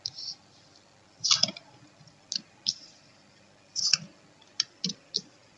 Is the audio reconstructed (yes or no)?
no